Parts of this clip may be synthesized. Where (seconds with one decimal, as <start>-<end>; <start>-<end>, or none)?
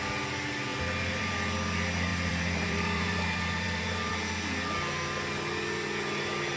0.7-1.3; 2.1-4.1